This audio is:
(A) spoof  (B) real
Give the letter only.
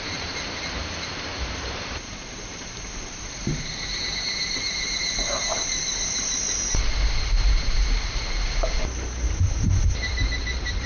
A